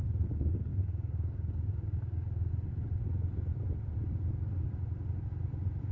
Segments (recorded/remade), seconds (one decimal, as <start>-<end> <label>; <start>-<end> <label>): 0.0-0.7 recorded; 0.7-2.5 remade; 2.5-5.9 recorded